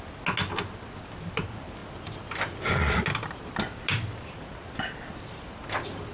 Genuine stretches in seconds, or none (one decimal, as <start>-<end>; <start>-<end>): 0.0-6.1